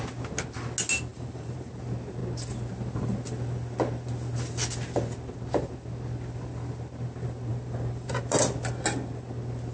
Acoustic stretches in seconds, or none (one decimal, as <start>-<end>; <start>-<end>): 0.0-1.1; 1.7-7.5; 8.4-9.7